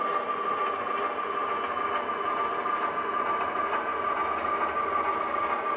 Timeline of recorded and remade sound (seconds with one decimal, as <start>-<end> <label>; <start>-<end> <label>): 0.0-5.8 recorded